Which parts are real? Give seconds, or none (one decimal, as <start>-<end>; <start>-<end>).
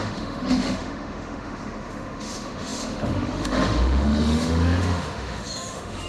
none